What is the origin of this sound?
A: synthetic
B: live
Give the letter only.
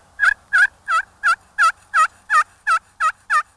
B